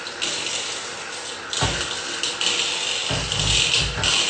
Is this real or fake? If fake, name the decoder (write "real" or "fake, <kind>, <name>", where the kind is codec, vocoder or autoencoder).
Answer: real